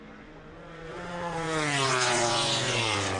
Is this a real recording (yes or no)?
no